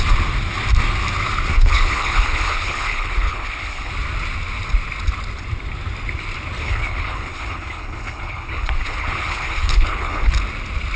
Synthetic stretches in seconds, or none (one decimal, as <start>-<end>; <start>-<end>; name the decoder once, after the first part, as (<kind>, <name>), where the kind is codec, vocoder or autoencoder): 1.5-3.9 (codec, HILCodec); 6.6-10.3